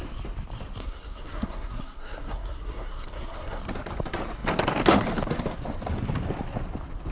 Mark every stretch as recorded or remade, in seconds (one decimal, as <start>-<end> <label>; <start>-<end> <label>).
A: 0.0-0.8 recorded; 0.8-3.6 remade; 3.6-7.1 recorded